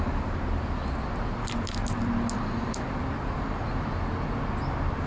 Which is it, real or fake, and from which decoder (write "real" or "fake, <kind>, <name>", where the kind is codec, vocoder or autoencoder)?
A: real